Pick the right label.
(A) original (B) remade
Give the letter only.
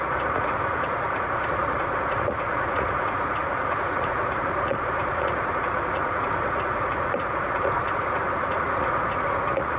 B